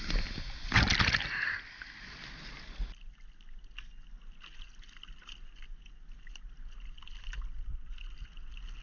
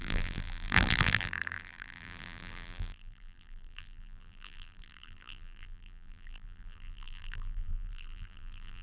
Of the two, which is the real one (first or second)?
first